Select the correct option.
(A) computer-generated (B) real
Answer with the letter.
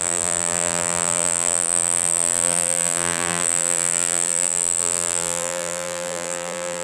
A